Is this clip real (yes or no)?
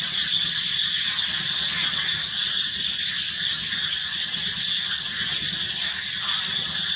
yes